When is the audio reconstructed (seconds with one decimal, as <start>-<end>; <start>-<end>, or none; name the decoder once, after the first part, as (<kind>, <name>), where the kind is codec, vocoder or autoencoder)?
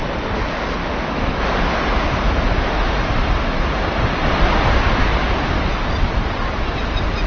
0.8-1.4 (autoencoder, DAC-VAE)